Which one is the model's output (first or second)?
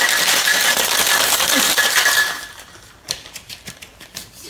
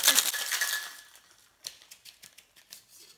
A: first